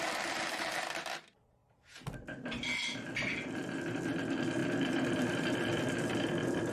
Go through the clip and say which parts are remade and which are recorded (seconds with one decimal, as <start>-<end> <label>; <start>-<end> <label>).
0.0-6.7 recorded